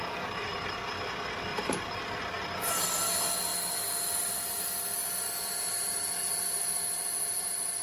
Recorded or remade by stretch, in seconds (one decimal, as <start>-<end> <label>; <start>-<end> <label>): 0.0-1.5 recorded; 1.5-2.2 remade; 2.2-7.8 recorded